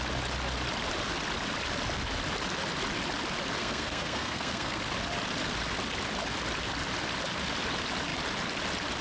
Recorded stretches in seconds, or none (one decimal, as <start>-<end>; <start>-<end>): 0.0-3.6; 4.8-9.0